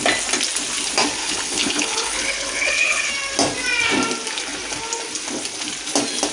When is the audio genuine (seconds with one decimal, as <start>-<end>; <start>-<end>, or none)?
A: 0.0-1.2; 3.1-6.3

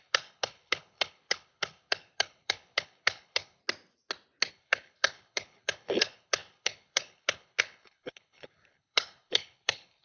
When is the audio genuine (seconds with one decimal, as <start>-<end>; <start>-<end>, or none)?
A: 3.6-4.5

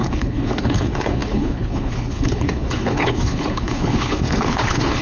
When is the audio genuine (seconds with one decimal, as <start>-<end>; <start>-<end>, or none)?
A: none

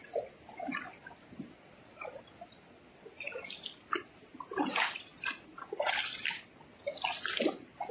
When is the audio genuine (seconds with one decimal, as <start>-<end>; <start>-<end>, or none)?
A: 0.0-7.9